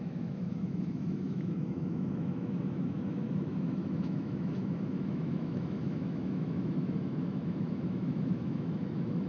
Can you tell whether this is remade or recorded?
remade